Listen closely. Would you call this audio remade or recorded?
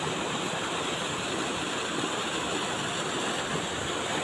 recorded